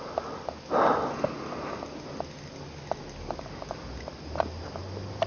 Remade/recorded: recorded